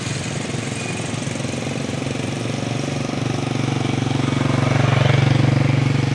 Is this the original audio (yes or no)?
yes